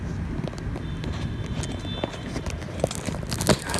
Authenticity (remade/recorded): recorded